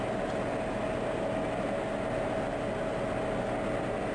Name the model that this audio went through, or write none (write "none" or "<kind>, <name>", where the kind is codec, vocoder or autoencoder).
none